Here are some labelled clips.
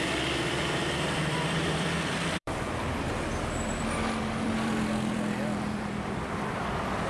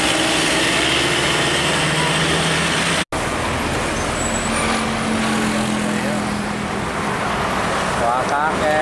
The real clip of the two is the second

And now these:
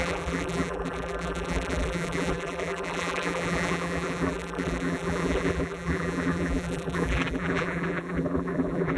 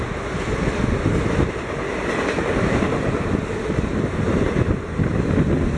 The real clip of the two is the second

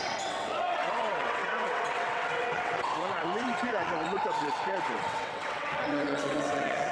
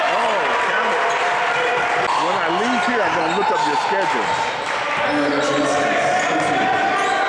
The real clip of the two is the second